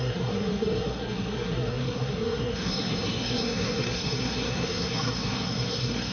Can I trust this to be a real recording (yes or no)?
no